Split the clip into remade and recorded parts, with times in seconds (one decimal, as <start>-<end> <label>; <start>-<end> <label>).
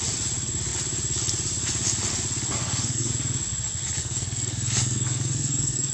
0.0-2.6 recorded; 2.6-3.1 remade; 3.1-4.0 recorded; 4.0-5.9 remade